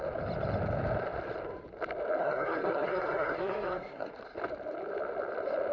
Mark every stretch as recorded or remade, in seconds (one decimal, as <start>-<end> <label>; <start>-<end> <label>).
0.0-2.2 recorded; 2.2-4.1 remade; 4.1-5.7 recorded